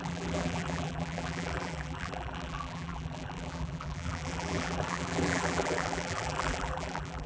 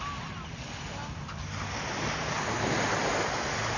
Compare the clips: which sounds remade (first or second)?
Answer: first